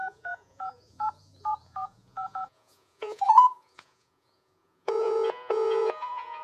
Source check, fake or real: fake